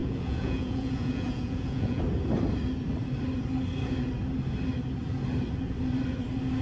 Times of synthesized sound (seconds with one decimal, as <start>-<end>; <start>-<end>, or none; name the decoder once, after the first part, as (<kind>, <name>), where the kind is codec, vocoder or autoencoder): 0.0-2.0 (vocoder, Vocos)